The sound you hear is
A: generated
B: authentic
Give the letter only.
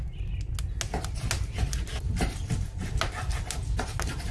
B